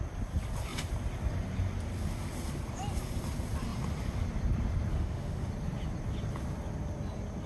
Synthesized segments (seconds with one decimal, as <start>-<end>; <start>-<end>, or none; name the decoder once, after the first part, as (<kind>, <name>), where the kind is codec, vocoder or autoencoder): 4.9-5.5 (autoencoder, DAC-VAE)